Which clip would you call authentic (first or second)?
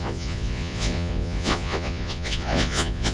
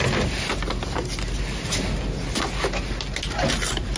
second